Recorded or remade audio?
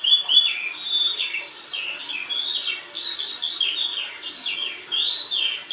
recorded